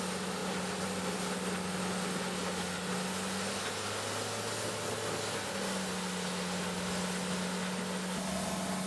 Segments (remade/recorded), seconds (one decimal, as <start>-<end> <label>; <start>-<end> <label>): 0.0-0.4 recorded; 0.4-1.2 remade; 1.2-8.9 recorded